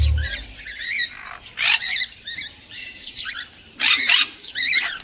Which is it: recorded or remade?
remade